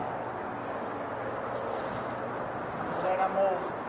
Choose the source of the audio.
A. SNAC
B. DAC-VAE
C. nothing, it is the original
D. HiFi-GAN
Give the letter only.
C